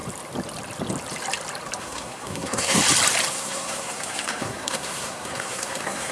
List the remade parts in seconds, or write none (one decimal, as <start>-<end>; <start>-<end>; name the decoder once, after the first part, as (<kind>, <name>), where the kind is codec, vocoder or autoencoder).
1.8-2.8 (codec, SNAC); 3.3-6.1